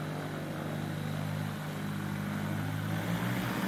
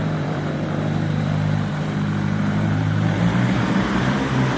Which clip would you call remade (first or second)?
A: second